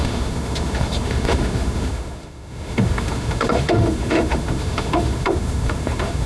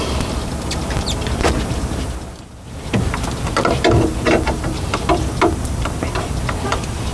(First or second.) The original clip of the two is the second